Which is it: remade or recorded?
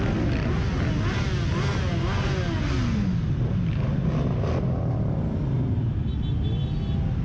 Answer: recorded